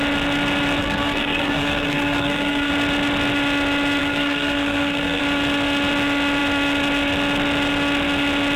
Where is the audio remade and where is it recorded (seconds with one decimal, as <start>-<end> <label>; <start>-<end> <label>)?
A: 0.0-0.8 recorded; 0.8-2.7 remade; 2.7-4.0 recorded; 4.0-5.2 remade; 5.2-8.6 recorded